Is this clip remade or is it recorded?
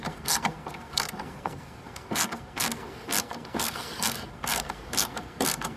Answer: remade